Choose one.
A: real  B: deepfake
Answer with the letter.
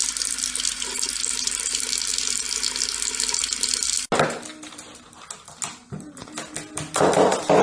A